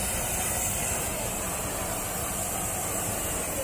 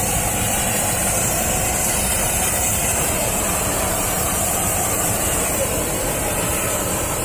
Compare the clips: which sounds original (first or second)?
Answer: first